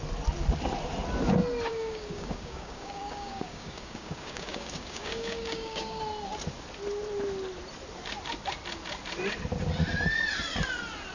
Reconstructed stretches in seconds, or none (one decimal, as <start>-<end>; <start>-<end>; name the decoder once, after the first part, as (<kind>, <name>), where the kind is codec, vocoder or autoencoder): 1.7-6.0 (codec, DAC)